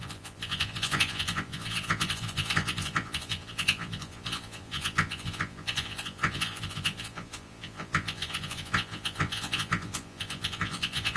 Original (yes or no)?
no